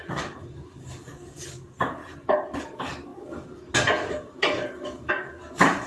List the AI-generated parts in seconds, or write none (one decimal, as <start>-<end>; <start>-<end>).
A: 0.0-2.0; 2.6-5.9